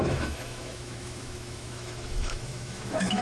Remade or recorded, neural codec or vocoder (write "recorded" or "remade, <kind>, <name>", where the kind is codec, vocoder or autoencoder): remade, autoencoder, DAC-VAE